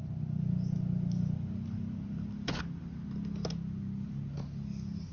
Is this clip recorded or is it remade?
recorded